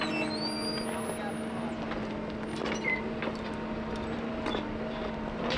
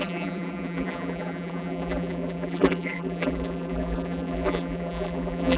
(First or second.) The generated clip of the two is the second